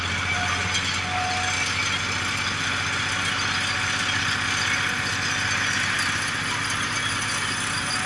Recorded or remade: recorded